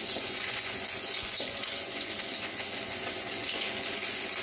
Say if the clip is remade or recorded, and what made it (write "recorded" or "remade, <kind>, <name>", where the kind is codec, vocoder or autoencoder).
remade, vocoder, Vocos